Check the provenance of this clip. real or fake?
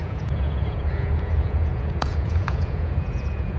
fake